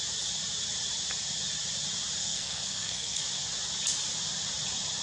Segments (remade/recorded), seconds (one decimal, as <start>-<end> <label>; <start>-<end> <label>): 0.0-2.2 recorded; 2.2-3.2 remade; 3.2-5.0 recorded